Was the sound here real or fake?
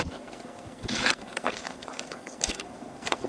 fake